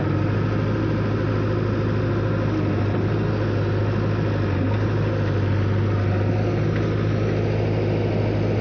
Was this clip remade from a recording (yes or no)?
no